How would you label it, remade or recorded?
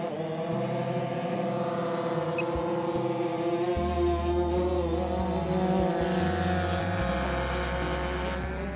recorded